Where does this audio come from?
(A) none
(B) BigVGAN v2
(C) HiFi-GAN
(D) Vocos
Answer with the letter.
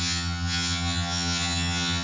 C